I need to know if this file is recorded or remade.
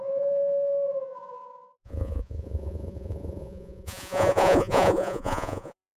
remade